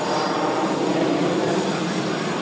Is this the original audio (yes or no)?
no